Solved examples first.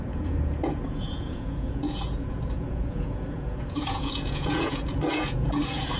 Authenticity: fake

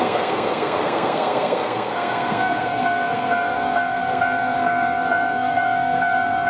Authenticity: fake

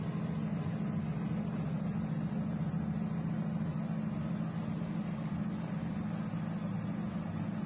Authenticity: real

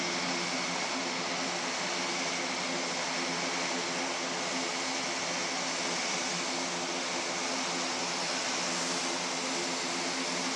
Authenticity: real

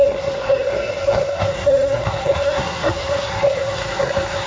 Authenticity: fake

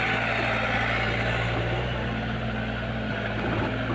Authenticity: real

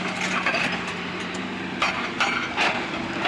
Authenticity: real